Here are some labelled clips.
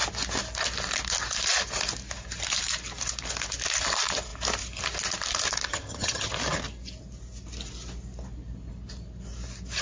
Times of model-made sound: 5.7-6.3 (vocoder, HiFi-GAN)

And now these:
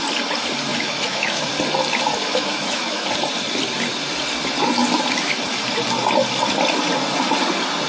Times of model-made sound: 0.7-1.5 (autoencoder, DAC-VAE); 2.2-3.1

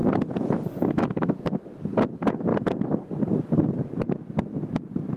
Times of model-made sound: 0.0-1.7 (autoencoder, DAC-VAE)